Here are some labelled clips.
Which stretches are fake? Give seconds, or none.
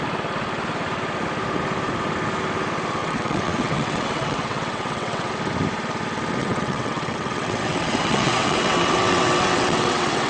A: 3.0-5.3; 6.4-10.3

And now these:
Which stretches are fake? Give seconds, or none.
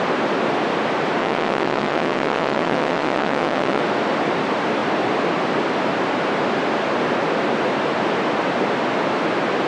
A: 1.2-3.8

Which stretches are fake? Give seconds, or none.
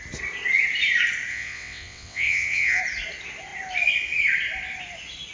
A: 1.3-2.8